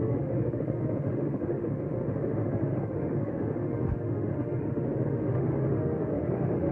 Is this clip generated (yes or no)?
yes